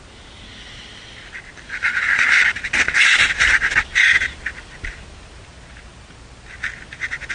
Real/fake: real